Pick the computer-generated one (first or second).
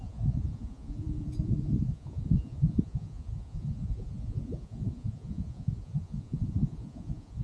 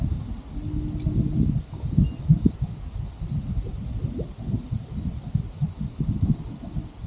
first